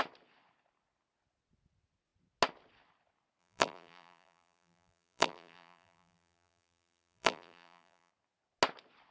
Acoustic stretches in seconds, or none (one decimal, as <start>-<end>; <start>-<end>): 0.0-3.4; 8.1-9.1